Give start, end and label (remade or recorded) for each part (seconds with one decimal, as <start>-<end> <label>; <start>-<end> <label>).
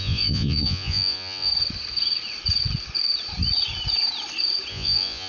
0.0-1.5 remade; 1.5-4.7 recorded; 4.7-5.3 remade